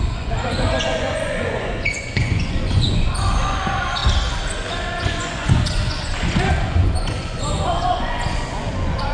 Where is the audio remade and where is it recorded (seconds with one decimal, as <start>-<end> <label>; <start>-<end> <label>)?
0.0-4.0 remade; 4.0-4.7 recorded; 4.7-9.1 remade